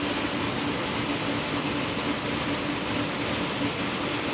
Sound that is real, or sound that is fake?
real